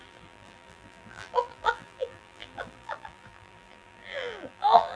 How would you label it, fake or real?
fake